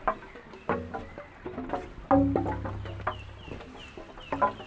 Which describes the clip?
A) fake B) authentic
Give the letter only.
B